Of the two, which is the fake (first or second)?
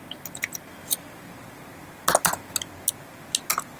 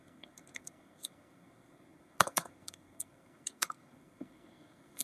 second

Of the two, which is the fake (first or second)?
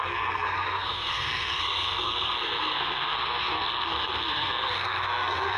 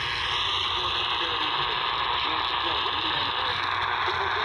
first